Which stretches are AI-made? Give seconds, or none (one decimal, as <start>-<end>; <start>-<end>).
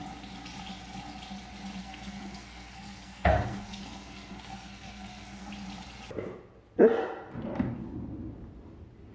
1.8-5.5